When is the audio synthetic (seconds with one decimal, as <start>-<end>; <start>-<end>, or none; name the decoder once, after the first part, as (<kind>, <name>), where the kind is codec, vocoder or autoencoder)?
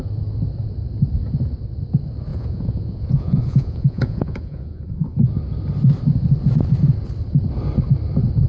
2.3-5.3 (vocoder, Vocos)